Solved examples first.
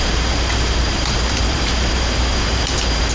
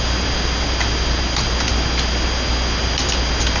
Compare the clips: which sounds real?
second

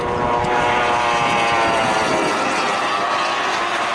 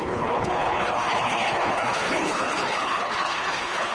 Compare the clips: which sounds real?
first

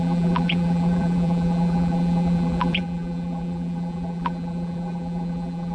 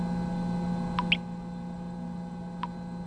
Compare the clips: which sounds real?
second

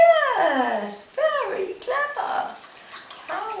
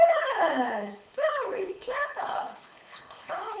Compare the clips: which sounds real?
first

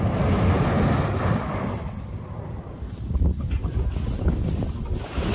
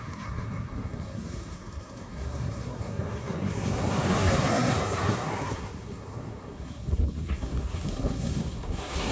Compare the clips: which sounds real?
first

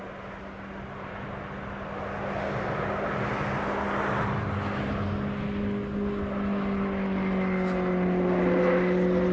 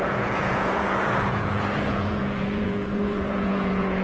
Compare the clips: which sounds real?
first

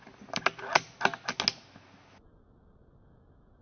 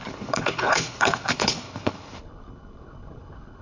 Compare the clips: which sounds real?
first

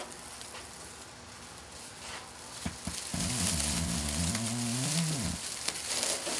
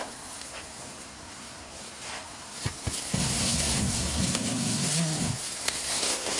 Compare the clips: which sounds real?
first